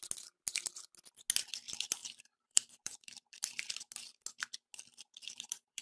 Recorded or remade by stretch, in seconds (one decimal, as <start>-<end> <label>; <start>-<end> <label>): 0.0-2.0 recorded; 2.0-3.7 remade; 3.7-5.2 recorded; 5.2-5.8 remade